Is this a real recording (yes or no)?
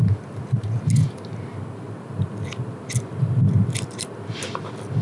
yes